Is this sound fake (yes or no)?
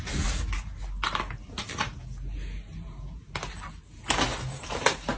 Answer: no